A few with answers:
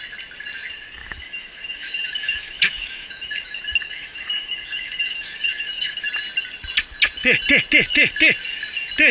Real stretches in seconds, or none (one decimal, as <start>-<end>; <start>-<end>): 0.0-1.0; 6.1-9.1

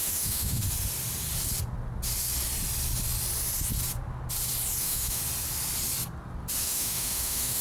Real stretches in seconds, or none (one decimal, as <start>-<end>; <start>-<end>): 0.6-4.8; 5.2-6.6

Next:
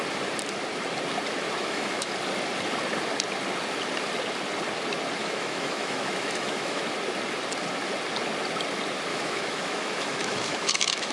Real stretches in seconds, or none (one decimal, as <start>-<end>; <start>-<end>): 0.0-1.6; 2.1-5.2; 6.8-9.1

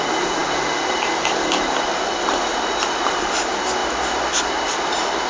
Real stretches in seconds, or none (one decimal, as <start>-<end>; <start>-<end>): 0.0-5.3